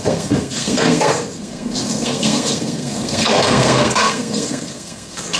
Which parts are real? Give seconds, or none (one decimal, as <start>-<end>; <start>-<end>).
none